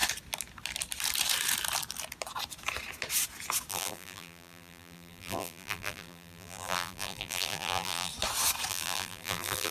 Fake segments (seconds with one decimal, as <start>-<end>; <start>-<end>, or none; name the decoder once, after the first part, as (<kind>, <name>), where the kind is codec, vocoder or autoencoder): 3.7-8.1 (vocoder, BigVGAN v2); 8.7-9.7